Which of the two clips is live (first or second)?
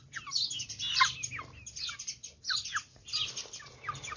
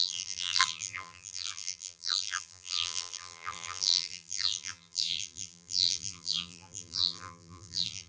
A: first